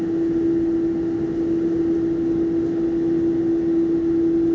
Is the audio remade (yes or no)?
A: no